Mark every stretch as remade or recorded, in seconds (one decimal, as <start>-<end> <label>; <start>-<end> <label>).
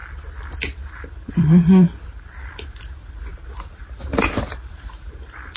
0.0-1.3 recorded; 1.3-5.6 remade